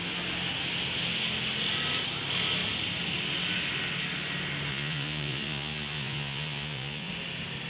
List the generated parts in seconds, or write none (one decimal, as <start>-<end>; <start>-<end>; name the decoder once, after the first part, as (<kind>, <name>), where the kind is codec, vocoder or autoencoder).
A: 4.7-7.1 (vocoder, Vocos)